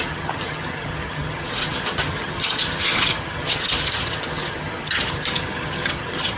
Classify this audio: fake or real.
fake